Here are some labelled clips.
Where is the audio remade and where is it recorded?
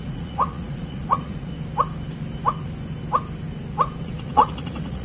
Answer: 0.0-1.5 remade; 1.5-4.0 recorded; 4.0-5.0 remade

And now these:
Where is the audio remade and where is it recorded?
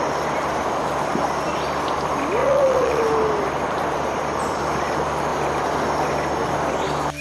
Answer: 0.0-2.4 recorded; 2.4-3.0 remade; 3.0-7.2 recorded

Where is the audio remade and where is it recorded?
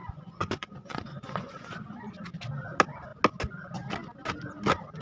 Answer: 0.0-1.8 remade; 1.8-5.0 recorded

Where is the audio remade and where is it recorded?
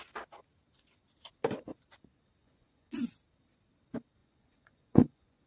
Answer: 0.0-2.4 recorded; 2.4-3.0 remade; 3.0-4.2 recorded; 4.2-5.5 remade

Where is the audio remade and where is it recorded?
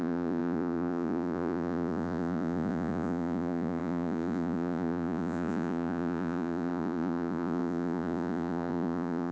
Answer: 0.0-9.3 remade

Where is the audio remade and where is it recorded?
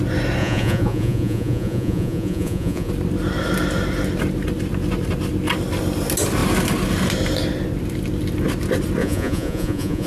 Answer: 0.0-0.4 recorded; 0.4-2.9 remade; 2.9-9.0 recorded; 9.0-10.1 remade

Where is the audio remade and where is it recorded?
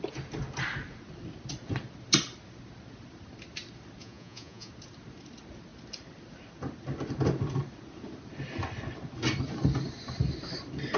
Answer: 0.0-4.0 recorded; 4.0-4.7 remade; 4.7-11.0 recorded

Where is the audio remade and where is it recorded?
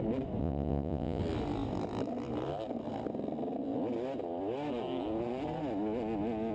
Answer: 0.0-0.4 recorded; 0.4-1.2 remade; 1.2-6.5 recorded